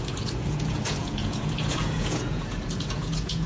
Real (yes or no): no